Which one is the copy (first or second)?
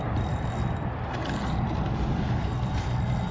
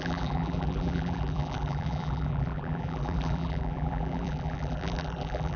second